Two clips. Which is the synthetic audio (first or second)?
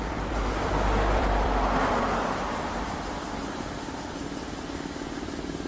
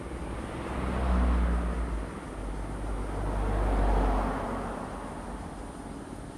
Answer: first